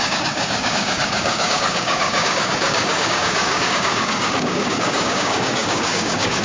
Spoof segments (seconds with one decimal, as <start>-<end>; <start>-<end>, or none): 0.0-6.4